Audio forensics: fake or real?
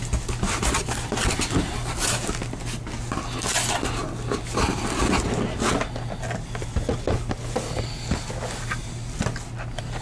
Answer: real